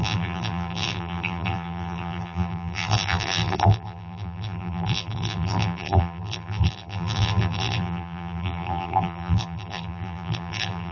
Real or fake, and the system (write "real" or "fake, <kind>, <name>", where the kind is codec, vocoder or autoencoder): fake, vocoder, BigVGAN v2